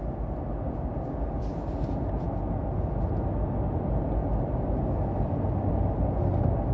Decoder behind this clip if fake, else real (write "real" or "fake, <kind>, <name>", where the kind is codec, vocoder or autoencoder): real